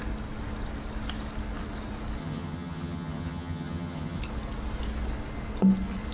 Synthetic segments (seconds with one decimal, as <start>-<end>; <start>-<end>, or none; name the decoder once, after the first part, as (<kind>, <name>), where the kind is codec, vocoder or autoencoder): 2.2-4.2 (vocoder, HiFi-GAN)